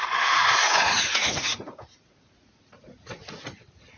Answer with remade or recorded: remade